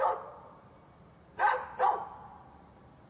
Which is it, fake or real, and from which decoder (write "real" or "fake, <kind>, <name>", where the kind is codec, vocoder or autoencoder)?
real